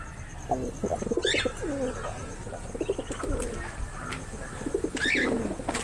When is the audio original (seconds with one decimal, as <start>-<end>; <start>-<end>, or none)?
0.0-5.8